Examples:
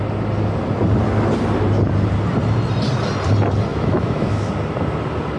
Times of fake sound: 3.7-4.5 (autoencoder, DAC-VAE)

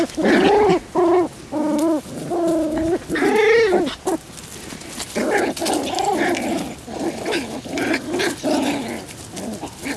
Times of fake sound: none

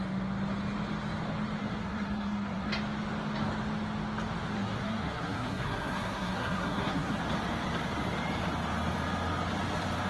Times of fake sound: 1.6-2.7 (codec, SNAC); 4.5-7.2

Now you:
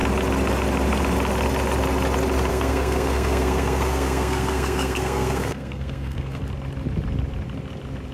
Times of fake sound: 2.5-6.4 (codec, SNAC)